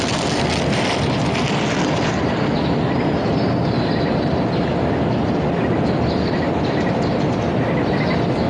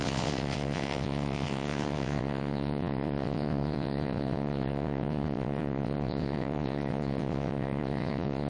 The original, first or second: first